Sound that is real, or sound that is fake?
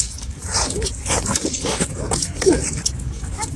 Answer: fake